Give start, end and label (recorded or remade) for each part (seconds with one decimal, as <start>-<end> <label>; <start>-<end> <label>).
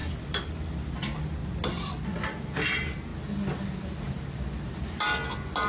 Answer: 0.0-5.7 recorded